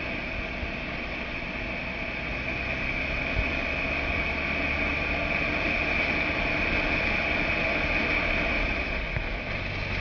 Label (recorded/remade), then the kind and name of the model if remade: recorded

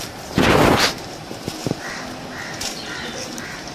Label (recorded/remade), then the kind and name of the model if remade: recorded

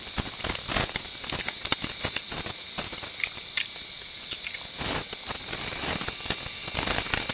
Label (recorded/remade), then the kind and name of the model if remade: recorded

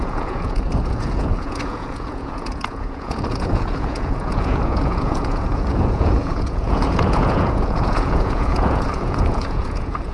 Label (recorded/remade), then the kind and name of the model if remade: remade, vocoder, Vocos